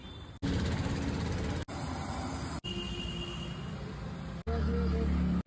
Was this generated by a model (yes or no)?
no